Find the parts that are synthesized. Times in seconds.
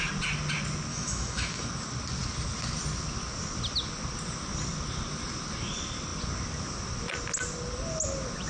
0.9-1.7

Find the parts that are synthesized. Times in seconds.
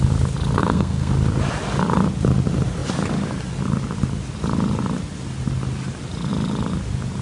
0.6-1.1